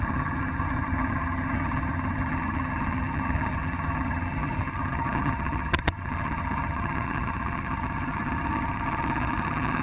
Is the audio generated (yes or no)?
yes